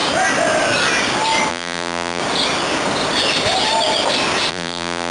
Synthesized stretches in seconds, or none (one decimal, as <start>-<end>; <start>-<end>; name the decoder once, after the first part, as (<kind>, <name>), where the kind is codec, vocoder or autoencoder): 1.5-2.2 (vocoder, BigVGAN v2); 4.5-5.1